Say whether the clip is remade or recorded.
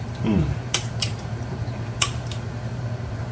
remade